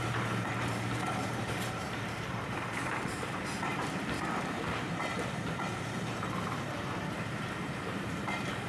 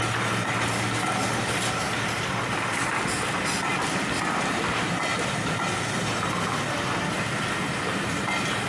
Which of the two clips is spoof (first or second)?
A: first